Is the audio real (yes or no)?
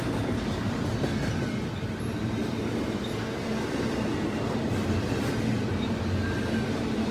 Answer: yes